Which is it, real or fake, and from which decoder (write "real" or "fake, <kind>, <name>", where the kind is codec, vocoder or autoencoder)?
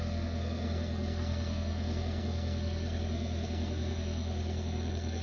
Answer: fake, codec, SNAC